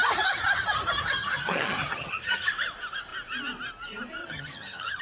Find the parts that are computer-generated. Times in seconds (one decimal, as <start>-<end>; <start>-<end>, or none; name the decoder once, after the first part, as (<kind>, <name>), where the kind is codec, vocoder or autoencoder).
1.2-2.5 (vocoder, HiFi-GAN); 4.2-5.0

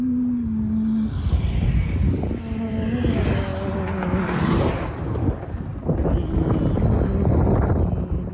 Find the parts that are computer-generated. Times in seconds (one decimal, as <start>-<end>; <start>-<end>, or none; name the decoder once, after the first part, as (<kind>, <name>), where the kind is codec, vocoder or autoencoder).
none

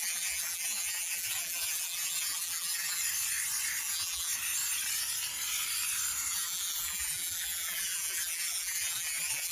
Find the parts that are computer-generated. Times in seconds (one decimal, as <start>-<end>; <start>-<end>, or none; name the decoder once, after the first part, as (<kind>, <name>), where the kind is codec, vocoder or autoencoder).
0.0-3.0 (vocoder, BigVGAN v2); 3.8-4.3; 6.3-9.5

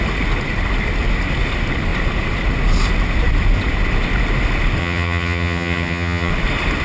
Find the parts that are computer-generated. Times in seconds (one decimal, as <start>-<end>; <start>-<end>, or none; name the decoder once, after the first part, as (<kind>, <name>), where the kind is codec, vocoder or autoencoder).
4.8-6.3 (vocoder, HiFi-GAN)

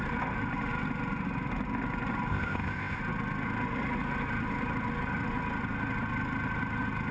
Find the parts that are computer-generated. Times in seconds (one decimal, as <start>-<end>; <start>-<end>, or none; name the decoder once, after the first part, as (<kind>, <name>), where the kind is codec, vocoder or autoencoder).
2.3-3.0 (codec, ZipCodec)

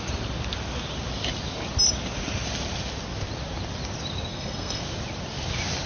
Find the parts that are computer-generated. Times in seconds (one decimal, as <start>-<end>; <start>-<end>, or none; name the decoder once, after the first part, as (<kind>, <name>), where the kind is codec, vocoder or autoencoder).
4.3-4.8 (codec, SNAC)

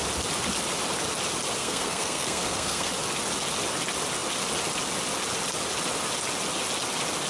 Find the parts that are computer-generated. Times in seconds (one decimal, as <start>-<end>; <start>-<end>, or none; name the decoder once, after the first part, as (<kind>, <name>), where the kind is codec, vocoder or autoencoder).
1.6-2.9 (codec, SNAC)